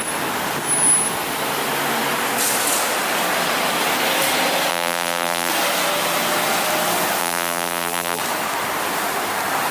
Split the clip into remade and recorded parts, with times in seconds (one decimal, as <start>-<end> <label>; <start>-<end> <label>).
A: 0.0-4.7 recorded; 4.7-5.5 remade; 5.5-7.2 recorded; 7.2-8.2 remade; 8.2-9.7 recorded